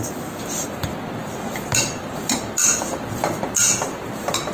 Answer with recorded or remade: recorded